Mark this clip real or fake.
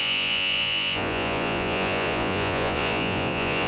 fake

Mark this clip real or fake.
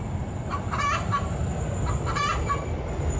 real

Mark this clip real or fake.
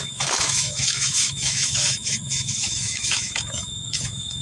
fake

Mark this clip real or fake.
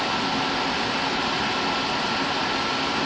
real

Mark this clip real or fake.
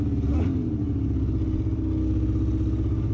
real